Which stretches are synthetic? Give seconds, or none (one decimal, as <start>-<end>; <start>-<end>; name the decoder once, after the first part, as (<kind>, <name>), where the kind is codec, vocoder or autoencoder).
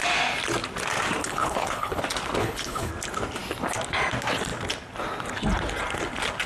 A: 1.2-2.0 (codec, HILCodec); 2.4-2.9